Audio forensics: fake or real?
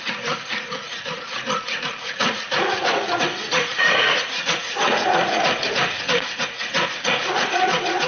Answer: fake